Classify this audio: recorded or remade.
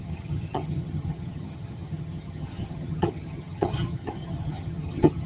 remade